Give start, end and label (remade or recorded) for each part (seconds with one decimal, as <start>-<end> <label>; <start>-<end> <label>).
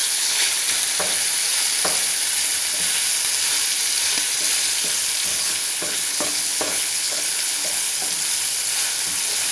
0.0-0.6 remade; 0.6-5.3 recorded; 5.3-7.9 remade; 7.9-9.5 recorded